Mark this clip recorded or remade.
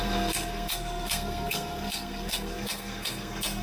remade